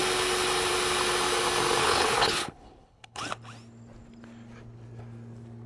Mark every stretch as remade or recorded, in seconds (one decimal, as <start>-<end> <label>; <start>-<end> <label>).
0.0-1.8 recorded; 1.8-3.2 remade; 3.2-5.7 recorded